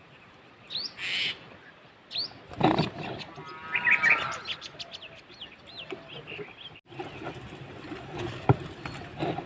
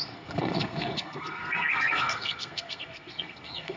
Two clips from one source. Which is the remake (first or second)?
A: second